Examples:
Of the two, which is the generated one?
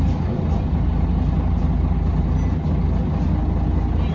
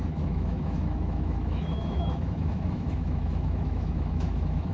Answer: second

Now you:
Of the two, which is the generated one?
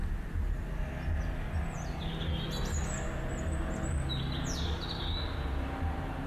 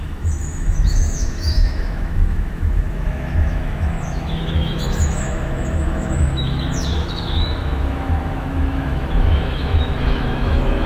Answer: second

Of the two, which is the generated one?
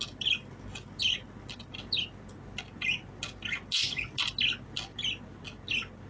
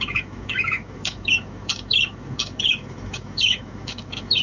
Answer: second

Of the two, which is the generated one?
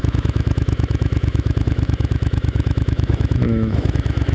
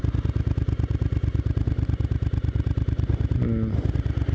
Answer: first